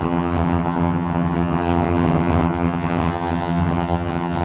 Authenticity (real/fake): fake